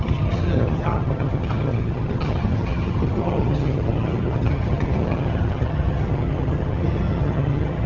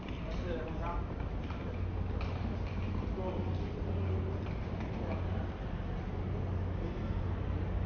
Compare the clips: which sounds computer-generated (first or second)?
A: first